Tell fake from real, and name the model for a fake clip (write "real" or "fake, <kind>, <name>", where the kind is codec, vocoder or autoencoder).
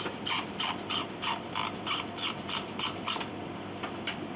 fake, vocoder, BigVGAN v2